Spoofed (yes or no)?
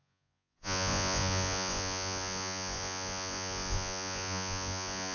yes